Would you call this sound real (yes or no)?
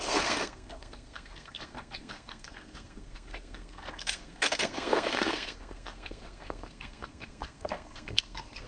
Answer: no